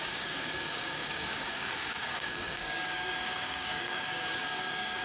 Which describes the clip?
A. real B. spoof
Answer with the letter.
B